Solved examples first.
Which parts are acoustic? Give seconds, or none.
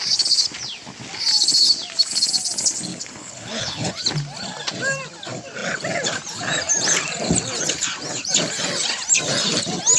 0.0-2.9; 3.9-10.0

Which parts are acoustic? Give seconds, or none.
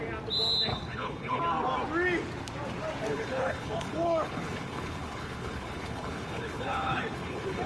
0.0-0.7; 1.4-3.1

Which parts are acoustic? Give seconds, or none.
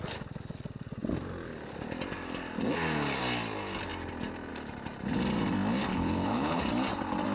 0.0-5.9; 6.6-7.3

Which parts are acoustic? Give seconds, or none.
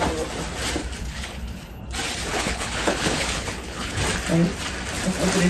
0.0-1.0; 1.8-2.3; 4.0-5.5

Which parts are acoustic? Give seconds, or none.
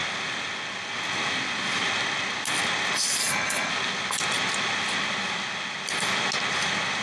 0.0-3.2; 3.7-7.0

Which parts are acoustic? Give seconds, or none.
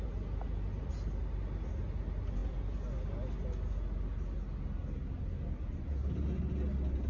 0.0-7.1